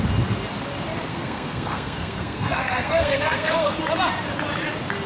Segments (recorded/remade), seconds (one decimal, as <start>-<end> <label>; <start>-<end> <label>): 0.0-1.1 recorded; 1.1-3.8 remade; 3.8-5.1 recorded